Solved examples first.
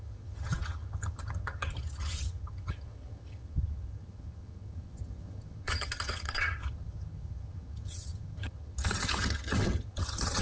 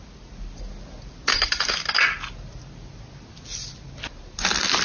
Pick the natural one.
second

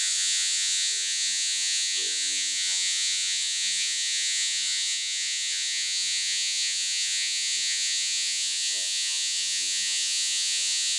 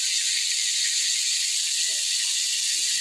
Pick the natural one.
second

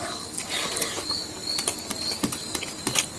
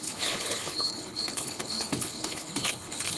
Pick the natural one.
first